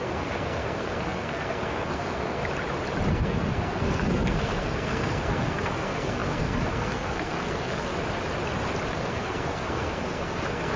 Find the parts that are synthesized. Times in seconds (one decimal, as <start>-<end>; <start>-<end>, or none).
0.0-2.4; 3.1-7.9; 8.9-10.8